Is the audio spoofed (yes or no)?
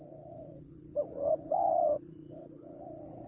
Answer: yes